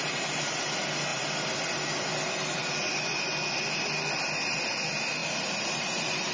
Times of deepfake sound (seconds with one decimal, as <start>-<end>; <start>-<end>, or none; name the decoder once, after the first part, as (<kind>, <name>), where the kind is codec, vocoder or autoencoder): none